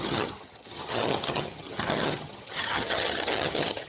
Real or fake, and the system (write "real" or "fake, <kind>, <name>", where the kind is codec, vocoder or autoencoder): fake, vocoder, HiFi-GAN